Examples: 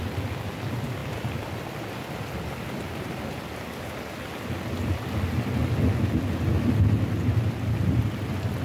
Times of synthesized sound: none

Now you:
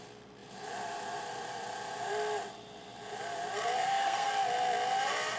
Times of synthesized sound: 3.8-4.3 (codec, SNAC)